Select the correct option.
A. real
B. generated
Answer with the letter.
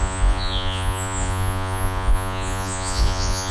B